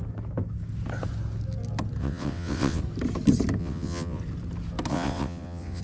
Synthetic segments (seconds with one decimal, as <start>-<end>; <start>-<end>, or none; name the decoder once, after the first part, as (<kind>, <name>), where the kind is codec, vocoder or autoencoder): 2.0-2.8 (vocoder, WaveNeXt); 3.6-4.2; 4.9-5.8